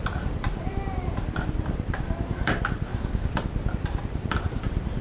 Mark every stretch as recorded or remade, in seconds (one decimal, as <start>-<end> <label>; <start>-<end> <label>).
0.0-2.9 remade; 2.9-3.7 recorded; 3.7-5.0 remade

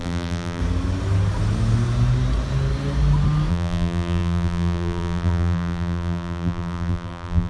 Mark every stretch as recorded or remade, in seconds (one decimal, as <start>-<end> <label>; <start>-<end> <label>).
0.0-0.6 remade; 0.6-3.5 recorded; 3.5-7.5 remade

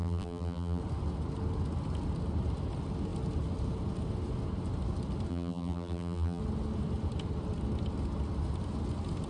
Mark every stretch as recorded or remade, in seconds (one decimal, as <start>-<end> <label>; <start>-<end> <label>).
0.0-0.8 remade; 0.8-5.3 recorded; 5.3-6.4 remade; 6.4-9.3 recorded

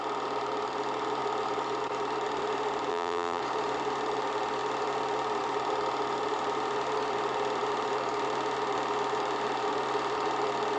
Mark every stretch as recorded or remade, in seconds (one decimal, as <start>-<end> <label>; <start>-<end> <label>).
0.0-2.9 recorded; 2.9-3.4 remade; 3.4-10.8 recorded